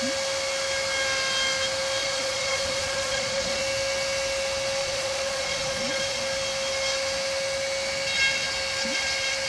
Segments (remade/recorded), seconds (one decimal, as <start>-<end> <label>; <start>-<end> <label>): 0.0-2.0 recorded; 2.0-3.6 remade; 3.6-4.8 recorded; 4.8-6.2 remade; 6.2-9.5 recorded